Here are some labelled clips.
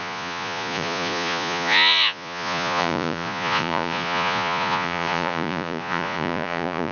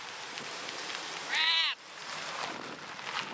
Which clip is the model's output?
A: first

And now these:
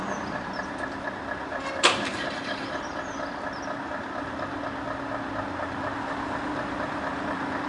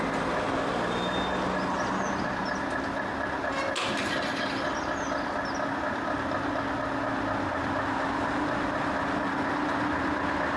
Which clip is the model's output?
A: first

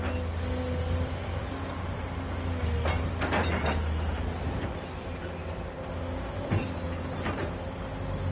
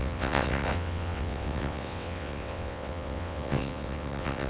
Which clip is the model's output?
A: second